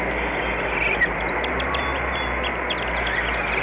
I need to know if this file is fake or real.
real